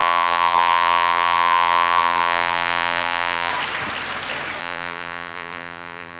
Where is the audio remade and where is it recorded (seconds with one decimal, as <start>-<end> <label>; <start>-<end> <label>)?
0.0-3.5 remade; 3.5-4.6 recorded; 4.6-6.2 remade